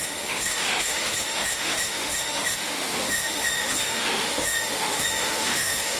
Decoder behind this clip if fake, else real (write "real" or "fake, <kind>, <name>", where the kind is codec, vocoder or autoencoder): fake, autoencoder, DAC-VAE